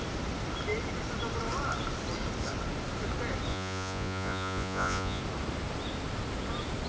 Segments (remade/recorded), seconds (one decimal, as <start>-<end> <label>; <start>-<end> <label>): 0.0-3.5 recorded; 3.5-5.2 remade; 5.2-6.9 recorded